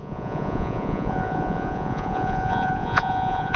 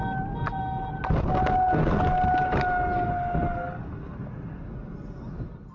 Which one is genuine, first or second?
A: second